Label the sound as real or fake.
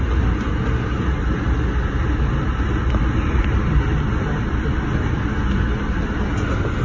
real